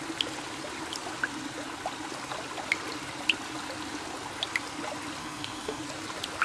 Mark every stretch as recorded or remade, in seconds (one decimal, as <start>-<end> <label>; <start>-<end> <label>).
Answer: 0.0-5.2 recorded; 5.2-5.8 remade; 5.8-6.4 recorded